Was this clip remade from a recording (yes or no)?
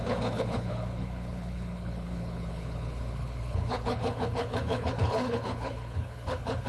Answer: yes